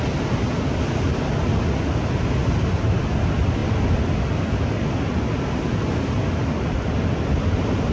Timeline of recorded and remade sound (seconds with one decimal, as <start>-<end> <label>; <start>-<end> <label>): 0.0-7.9 recorded